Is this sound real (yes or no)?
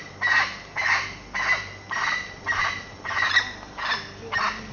yes